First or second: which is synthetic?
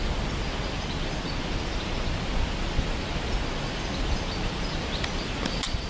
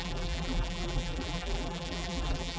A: second